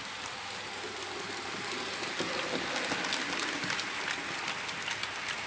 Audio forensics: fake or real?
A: real